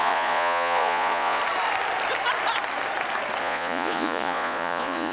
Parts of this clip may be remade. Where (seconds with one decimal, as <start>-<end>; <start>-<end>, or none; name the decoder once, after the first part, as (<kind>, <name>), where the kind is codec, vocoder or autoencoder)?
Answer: 0.0-1.4 (vocoder, Vocos); 3.4-5.1